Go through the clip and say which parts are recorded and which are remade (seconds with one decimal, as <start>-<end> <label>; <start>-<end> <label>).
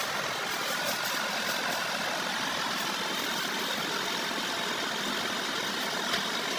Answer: 0.0-6.6 recorded